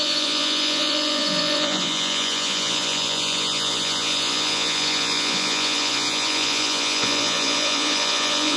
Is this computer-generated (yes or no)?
yes